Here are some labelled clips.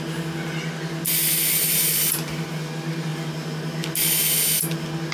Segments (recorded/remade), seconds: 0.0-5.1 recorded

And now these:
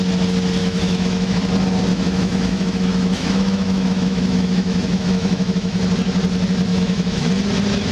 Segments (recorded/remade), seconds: 0.0-0.6 recorded; 0.6-1.4 remade; 1.4-1.9 recorded; 1.9-5.8 remade; 5.8-6.7 recorded; 6.7-7.3 remade; 7.3-7.9 recorded

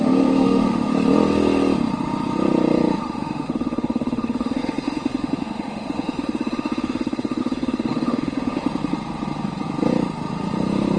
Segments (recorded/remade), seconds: 0.0-0.9 remade; 0.9-3.0 recorded; 3.0-8.6 remade; 8.6-11.0 recorded

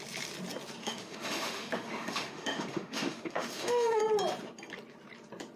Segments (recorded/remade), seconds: 0.0-0.8 recorded; 0.8-4.0 remade; 4.0-5.6 recorded